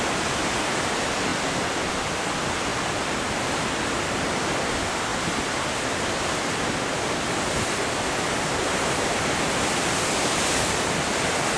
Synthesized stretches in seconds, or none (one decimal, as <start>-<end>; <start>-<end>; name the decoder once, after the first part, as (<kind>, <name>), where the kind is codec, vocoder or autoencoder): none